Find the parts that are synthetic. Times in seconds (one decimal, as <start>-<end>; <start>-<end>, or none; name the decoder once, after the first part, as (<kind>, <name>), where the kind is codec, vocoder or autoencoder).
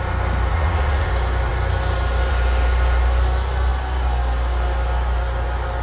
0.5-1.1 (vocoder, Vocos)